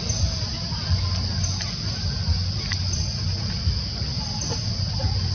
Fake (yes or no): no